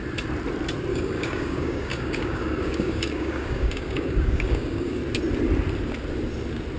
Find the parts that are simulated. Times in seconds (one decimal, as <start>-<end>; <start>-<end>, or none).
0.9-5.0